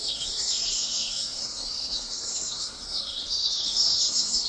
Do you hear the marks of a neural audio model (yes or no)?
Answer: yes